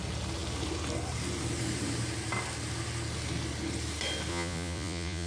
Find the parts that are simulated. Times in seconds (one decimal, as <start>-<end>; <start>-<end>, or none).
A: 4.3-5.3